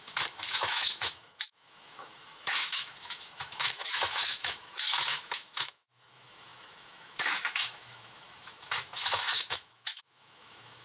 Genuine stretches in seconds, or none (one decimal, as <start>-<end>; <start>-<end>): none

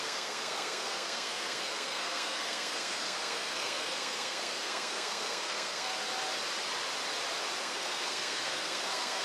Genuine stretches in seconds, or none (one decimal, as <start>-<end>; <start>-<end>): 5.9-7.6

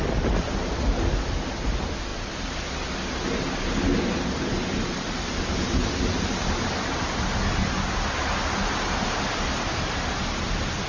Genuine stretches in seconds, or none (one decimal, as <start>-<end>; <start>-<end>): 0.0-10.9

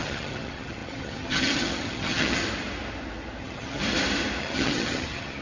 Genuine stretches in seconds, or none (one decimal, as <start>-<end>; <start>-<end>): 2.4-3.4; 3.8-4.4